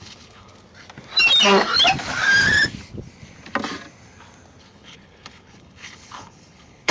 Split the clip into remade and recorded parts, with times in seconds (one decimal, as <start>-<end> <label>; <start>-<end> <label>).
0.0-0.5 remade; 0.5-4.6 recorded; 4.6-6.9 remade